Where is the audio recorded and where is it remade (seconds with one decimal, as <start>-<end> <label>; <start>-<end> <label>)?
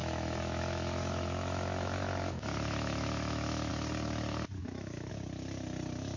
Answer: 0.0-3.7 remade; 3.7-4.6 recorded; 4.6-5.1 remade; 5.1-6.2 recorded